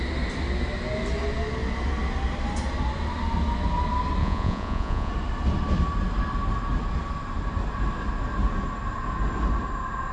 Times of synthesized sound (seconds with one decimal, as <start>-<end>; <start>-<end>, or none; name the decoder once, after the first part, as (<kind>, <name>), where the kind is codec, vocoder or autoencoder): 4.2-5.1 (vocoder, Vocos)